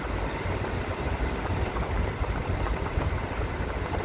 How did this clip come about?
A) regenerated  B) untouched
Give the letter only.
B